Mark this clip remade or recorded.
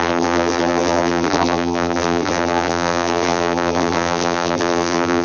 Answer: remade